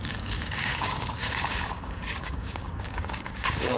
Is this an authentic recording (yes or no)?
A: no